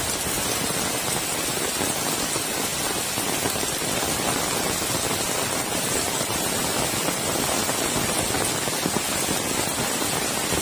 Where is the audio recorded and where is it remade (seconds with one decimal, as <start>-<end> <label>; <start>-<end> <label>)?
0.0-10.6 recorded